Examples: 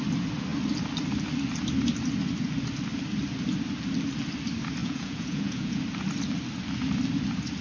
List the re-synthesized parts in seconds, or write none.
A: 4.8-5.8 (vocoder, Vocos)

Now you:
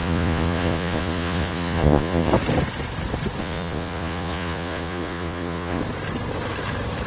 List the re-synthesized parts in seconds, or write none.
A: 0.0-2.3 (vocoder, Vocos); 3.4-5.8

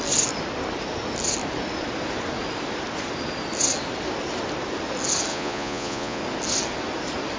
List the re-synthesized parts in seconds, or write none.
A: 5.3-6.2 (vocoder, Vocos)